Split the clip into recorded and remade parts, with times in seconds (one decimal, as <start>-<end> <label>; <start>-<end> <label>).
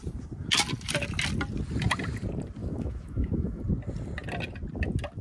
0.0-2.6 recorded; 2.6-3.6 remade; 3.6-5.2 recorded